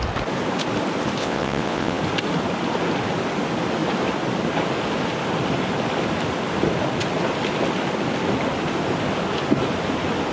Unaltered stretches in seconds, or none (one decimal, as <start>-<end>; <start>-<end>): 0.0-1.2; 2.0-10.3